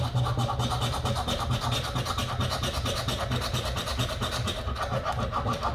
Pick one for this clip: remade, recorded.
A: recorded